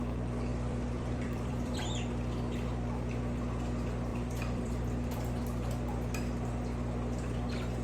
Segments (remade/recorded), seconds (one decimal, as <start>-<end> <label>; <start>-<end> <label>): 0.0-0.5 recorded; 0.5-1.8 remade; 1.8-4.1 recorded; 4.1-5.4 remade; 5.4-7.8 recorded